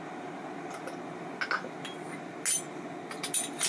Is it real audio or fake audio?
real